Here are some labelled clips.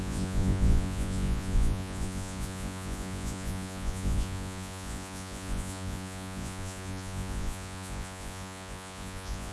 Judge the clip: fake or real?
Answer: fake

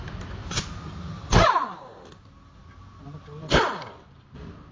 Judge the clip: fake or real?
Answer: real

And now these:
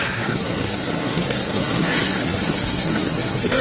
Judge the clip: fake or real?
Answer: fake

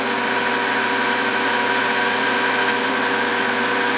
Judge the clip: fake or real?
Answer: real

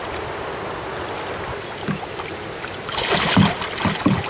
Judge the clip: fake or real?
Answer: real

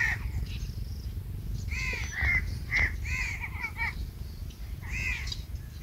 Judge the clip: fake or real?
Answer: real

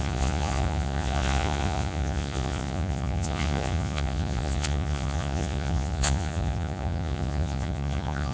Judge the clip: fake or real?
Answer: fake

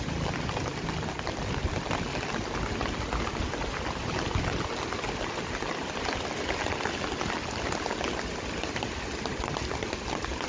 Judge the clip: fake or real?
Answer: real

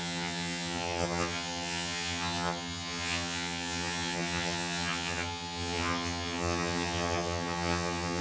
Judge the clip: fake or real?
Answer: fake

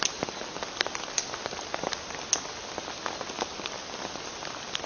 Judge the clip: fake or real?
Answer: real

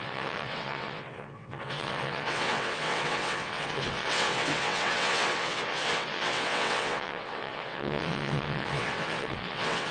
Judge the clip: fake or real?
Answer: fake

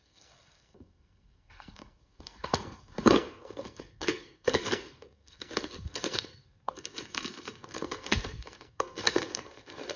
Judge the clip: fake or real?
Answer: fake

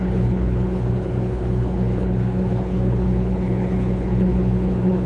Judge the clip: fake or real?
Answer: fake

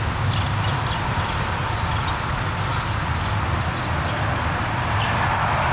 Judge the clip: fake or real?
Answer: real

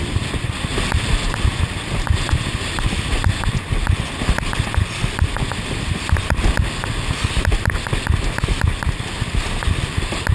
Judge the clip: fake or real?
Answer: real